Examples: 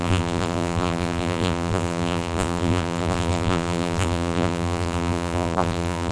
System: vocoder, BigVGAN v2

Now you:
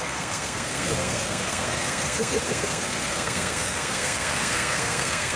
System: codec, SNAC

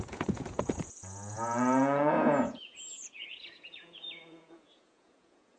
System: vocoder, Vocos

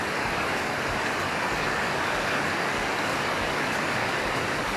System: codec, DAC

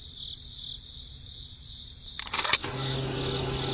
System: none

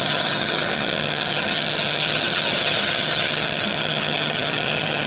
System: vocoder, HiFi-GAN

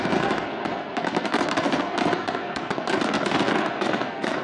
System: codec, SNAC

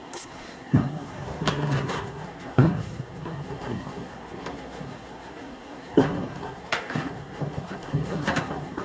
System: codec, SNAC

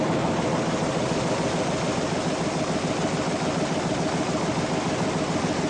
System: none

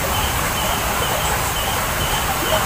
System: none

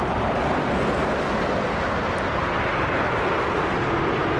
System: none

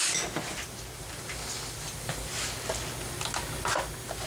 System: none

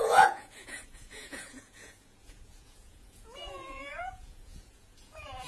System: vocoder, Vocos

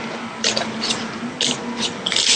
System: none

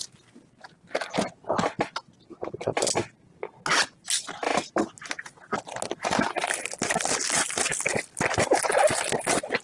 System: none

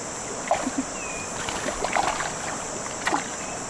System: none